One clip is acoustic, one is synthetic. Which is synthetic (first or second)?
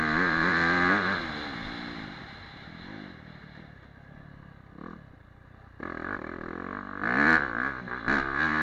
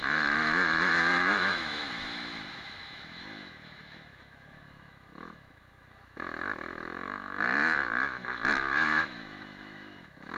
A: second